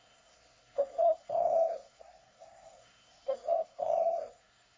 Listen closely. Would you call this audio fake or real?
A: fake